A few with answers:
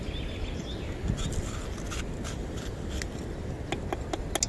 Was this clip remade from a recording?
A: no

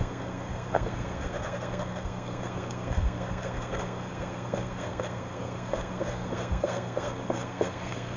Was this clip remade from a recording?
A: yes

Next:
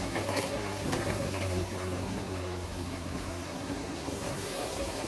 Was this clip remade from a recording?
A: yes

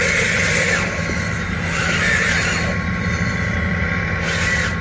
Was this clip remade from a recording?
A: no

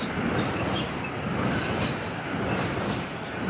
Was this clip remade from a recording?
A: no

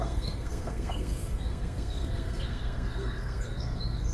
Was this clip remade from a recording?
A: yes